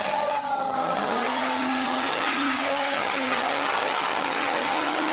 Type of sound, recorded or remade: remade